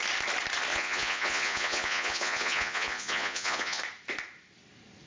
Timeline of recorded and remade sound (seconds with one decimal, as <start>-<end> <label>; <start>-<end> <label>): 0.0-0.7 recorded; 0.7-3.8 remade; 3.8-5.1 recorded